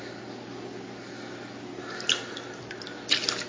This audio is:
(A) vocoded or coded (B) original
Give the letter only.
B